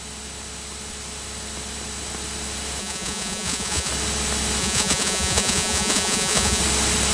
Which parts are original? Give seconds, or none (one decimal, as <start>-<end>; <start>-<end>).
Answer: 0.0-2.8; 3.9-4.6; 6.6-7.1